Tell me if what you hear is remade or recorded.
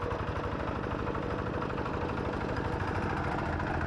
remade